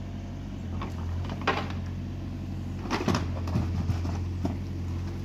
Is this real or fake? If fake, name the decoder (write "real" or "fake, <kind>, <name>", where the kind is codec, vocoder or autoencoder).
real